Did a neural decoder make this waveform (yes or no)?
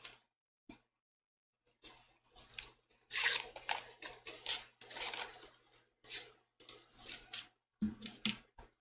no